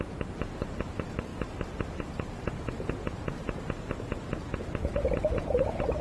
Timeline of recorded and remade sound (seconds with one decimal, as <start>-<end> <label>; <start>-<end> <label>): 0.0-1.3 recorded; 1.3-2.9 remade; 2.9-6.0 recorded